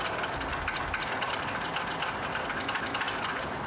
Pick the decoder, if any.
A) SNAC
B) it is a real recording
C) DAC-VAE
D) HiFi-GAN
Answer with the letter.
B